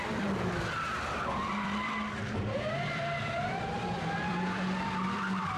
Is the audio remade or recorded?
remade